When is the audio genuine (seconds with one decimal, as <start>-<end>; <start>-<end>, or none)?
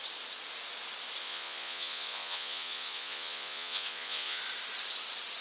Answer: 0.0-1.2; 4.4-5.4